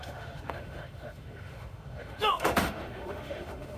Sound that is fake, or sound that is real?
fake